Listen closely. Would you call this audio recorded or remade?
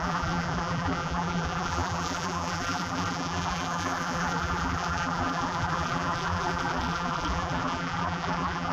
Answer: remade